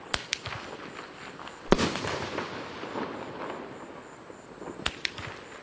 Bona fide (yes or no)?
yes